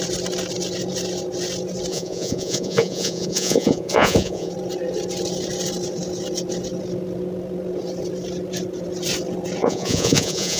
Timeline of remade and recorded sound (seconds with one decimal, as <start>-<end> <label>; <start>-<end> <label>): 0.0-1.9 recorded; 1.9-4.5 remade; 4.5-9.6 recorded; 9.6-10.6 remade